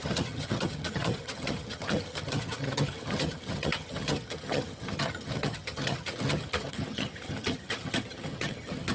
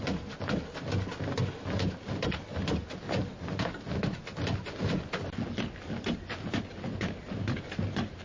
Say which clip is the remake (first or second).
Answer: first